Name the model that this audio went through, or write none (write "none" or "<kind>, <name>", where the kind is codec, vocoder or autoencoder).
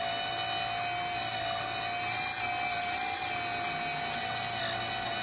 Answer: none